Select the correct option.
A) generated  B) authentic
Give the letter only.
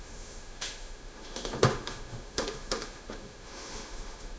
A